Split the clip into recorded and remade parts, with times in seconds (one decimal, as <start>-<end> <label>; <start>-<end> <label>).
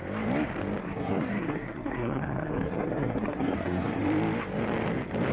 0.0-0.8 recorded; 0.8-4.0 remade; 4.0-5.3 recorded